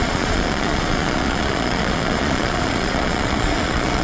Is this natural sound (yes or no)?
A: no